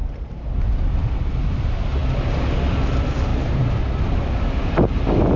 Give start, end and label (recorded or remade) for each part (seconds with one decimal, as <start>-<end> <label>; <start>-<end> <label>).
0.0-1.3 remade; 1.3-3.3 recorded; 3.3-3.8 remade; 3.8-5.4 recorded